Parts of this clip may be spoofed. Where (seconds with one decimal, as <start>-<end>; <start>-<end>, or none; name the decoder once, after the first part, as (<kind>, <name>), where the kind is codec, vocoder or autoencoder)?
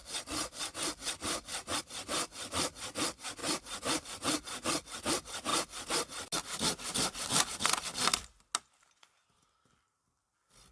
none